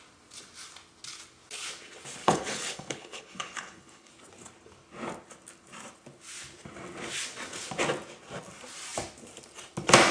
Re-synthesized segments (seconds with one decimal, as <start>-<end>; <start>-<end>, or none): 2.2-4.1